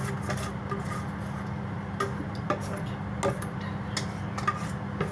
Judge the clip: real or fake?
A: real